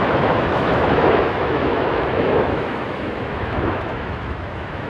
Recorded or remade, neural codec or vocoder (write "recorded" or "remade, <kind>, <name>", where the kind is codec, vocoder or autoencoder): remade, autoencoder, DAC-VAE